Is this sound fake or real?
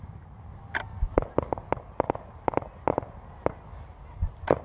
real